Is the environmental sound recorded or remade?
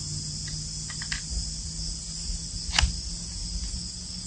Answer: recorded